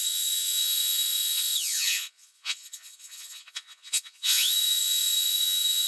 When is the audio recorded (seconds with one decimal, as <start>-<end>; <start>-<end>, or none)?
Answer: none